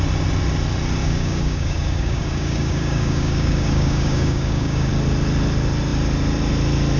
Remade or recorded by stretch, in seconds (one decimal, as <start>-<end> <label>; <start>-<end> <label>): 0.0-1.0 recorded; 1.0-4.9 remade; 4.9-7.0 recorded

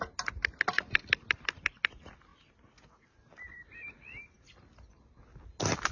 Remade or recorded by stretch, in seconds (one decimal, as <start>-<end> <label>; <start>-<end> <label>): 0.0-5.9 recorded

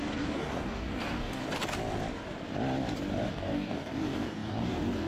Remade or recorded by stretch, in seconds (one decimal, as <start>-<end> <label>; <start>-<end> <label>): 0.0-1.4 remade; 1.4-3.3 recorded; 3.3-5.1 remade

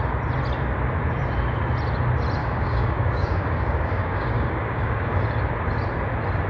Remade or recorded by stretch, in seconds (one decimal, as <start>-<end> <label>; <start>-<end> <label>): 0.0-2.4 recorded; 2.4-5.2 remade; 5.2-6.5 recorded

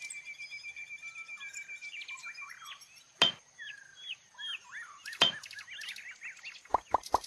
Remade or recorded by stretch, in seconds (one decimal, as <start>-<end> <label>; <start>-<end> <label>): 0.0-7.3 recorded